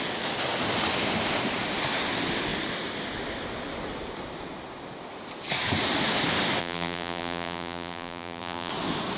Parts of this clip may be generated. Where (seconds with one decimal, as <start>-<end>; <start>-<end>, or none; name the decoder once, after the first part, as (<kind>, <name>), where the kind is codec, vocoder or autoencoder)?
6.6-8.7 (vocoder, BigVGAN v2)